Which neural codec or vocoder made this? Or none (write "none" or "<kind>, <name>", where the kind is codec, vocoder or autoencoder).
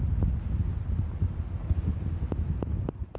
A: none